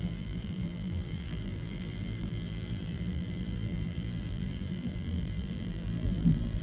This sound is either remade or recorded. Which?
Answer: remade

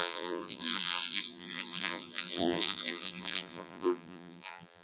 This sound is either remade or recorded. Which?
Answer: remade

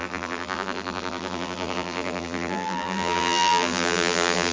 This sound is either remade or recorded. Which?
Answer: remade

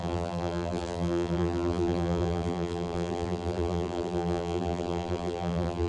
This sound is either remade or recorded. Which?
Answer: remade